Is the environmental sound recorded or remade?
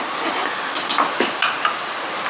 recorded